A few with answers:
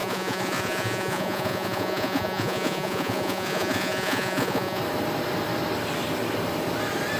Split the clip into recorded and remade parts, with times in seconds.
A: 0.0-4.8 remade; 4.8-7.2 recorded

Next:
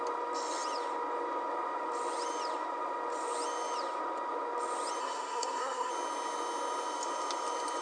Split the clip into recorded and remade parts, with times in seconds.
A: 0.0-5.0 recorded; 5.0-5.9 remade; 5.9-7.8 recorded

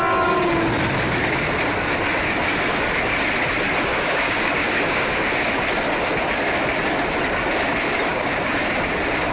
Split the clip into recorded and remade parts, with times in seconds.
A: 0.0-3.9 recorded; 3.9-5.3 remade; 5.3-8.1 recorded; 8.1-8.6 remade; 8.6-9.3 recorded

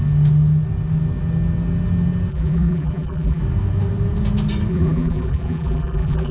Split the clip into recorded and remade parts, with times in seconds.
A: 0.0-2.3 recorded; 2.3-3.4 remade; 3.4-4.7 recorded; 4.7-6.3 remade

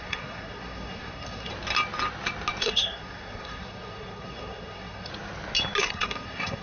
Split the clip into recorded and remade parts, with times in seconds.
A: 0.0-1.5 remade; 1.5-2.6 recorded; 2.6-5.1 remade; 5.1-5.8 recorded; 5.8-6.6 remade